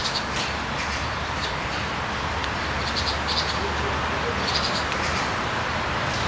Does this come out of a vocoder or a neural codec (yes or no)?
no